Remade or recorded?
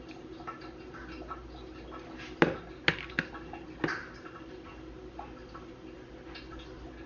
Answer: recorded